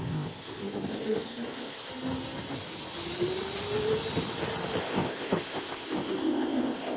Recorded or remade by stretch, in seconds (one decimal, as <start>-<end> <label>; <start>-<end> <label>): 0.0-1.9 remade; 1.9-4.8 recorded; 4.8-7.0 remade